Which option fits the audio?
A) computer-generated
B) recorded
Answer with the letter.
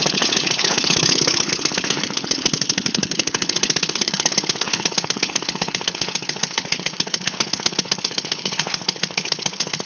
A